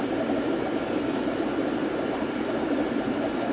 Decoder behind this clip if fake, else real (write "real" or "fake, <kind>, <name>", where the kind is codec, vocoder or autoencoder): real